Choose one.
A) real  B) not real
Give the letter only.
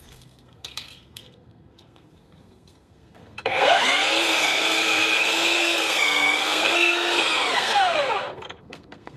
B